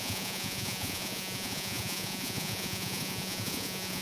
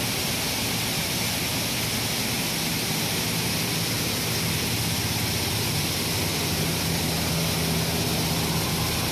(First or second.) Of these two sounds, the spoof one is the first